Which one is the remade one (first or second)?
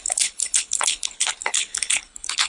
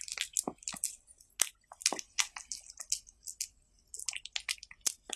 first